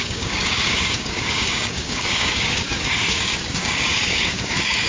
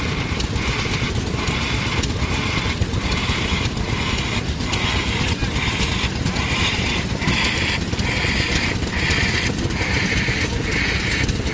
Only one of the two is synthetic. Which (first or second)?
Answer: first